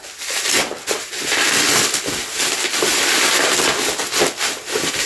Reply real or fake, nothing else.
real